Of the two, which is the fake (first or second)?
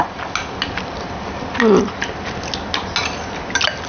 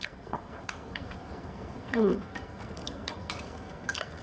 second